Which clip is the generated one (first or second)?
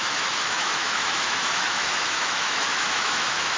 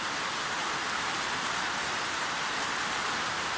first